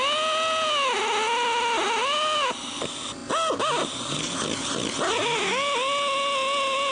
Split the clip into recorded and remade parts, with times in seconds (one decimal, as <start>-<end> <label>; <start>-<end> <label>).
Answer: 0.0-2.0 recorded; 2.0-2.7 remade; 2.7-6.9 recorded